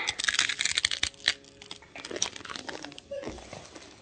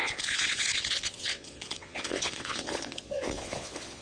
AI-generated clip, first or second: second